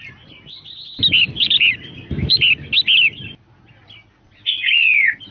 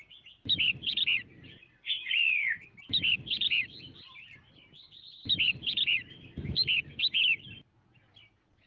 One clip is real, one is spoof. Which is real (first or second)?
first